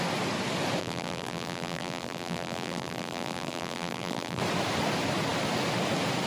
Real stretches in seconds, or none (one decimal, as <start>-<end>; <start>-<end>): 0.0-0.8; 4.4-6.3